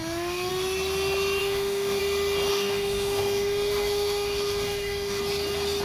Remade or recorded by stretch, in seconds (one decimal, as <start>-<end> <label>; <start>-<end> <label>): 0.0-0.5 remade; 0.5-1.4 recorded; 1.4-2.0 remade; 2.0-2.5 recorded; 2.5-5.2 remade; 5.2-5.8 recorded